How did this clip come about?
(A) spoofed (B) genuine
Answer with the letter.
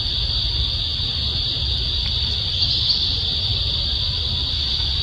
B